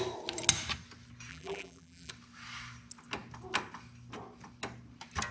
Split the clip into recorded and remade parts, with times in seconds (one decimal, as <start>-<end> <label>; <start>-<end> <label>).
0.0-1.3 recorded; 1.3-2.1 remade; 2.1-5.3 recorded